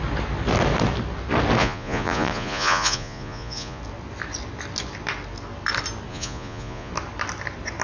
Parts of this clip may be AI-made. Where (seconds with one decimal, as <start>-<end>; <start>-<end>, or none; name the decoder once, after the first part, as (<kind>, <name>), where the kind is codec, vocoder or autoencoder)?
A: 1.6-3.8 (vocoder, Vocos); 6.1-6.9